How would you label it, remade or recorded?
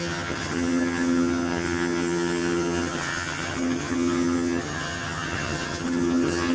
remade